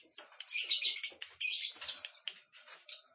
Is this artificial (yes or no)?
yes